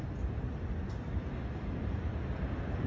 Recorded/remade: recorded